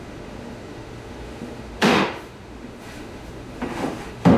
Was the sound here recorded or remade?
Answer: remade